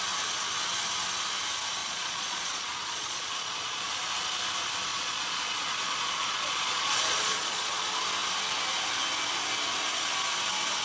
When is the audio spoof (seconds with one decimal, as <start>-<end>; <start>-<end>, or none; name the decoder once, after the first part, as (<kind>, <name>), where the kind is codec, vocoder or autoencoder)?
1.8-4.0 (vocoder, Vocos); 4.9-7.8